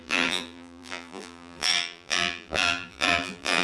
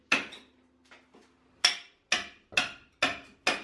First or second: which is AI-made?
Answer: first